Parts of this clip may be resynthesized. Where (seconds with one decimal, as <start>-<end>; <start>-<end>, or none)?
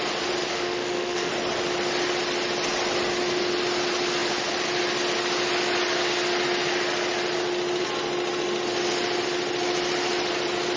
0.5-1.3